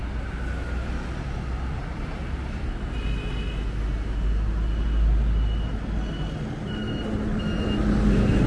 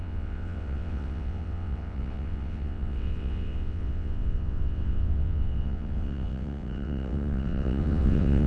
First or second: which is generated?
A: second